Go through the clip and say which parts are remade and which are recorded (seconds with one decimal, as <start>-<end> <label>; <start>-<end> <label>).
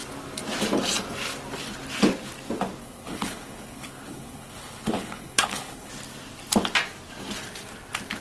0.0-2.8 recorded; 2.8-5.9 remade; 5.9-8.2 recorded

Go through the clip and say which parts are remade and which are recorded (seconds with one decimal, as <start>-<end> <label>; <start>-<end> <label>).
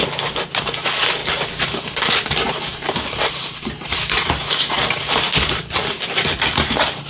0.0-1.2 recorded; 1.2-4.8 remade; 4.8-7.1 recorded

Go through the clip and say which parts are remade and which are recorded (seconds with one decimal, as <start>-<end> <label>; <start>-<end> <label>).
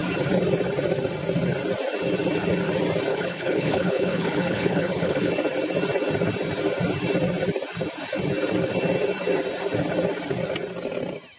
0.0-3.1 recorded; 3.1-5.3 remade; 5.3-11.4 recorded